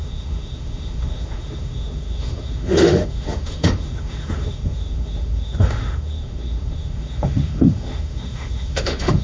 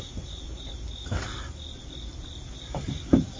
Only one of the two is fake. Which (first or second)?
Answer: first